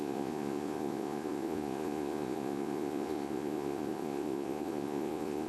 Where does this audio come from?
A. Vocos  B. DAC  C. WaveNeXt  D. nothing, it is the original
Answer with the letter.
A